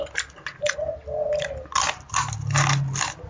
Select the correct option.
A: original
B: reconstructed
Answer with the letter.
A